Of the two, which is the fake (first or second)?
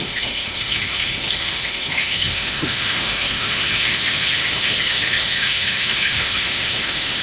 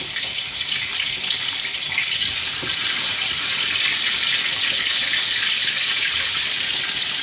first